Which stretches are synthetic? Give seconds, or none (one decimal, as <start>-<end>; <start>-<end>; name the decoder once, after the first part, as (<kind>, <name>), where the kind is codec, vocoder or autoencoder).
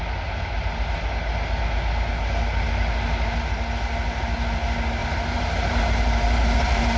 5.0-7.0 (vocoder, BigVGAN v2)